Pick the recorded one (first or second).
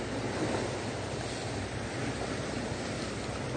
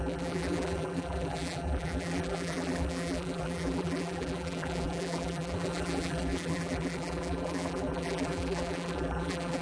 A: first